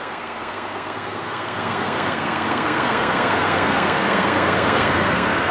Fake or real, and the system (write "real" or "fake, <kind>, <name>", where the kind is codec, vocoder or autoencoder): fake, codec, SNAC